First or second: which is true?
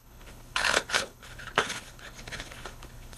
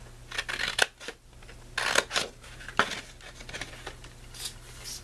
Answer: second